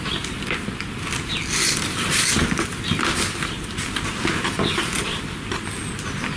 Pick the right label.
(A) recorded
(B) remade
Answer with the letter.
A